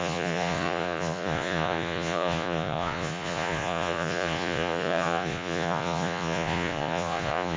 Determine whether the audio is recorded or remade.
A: remade